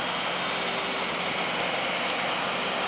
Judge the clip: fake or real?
real